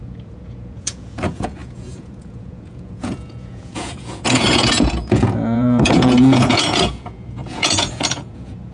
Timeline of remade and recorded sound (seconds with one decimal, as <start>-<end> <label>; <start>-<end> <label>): 0.0-8.7 remade